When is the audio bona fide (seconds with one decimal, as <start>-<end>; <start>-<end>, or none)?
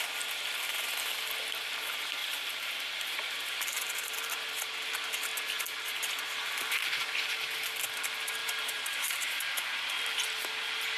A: 0.0-2.2; 4.3-8.4; 9.9-11.0